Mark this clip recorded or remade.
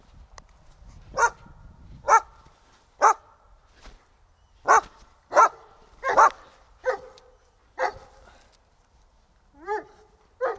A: recorded